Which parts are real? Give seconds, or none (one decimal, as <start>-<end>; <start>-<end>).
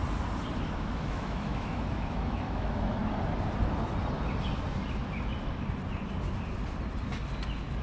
0.0-0.6; 3.0-7.8